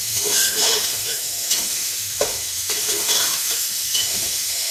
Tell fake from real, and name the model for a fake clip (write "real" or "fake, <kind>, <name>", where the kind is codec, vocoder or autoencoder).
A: fake, autoencoder, DAC-VAE